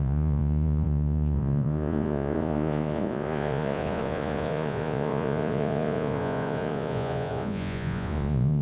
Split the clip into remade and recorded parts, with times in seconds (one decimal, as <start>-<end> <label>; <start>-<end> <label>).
0.0-8.6 remade